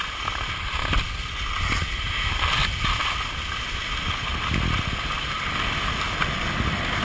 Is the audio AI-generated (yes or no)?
no